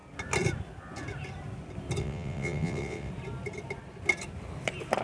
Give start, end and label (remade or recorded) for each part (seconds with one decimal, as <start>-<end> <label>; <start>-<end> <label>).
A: 0.0-2.0 recorded; 2.0-3.1 remade; 3.1-5.0 recorded